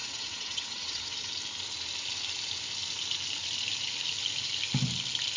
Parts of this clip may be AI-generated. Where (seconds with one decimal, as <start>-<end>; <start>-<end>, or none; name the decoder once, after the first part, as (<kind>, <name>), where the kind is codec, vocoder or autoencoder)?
0.0-1.3 (vocoder, WaveNeXt)